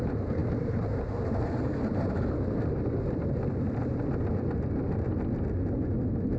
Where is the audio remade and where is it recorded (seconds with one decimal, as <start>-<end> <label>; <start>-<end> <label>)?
0.0-0.4 recorded; 0.4-2.8 remade; 2.8-6.4 recorded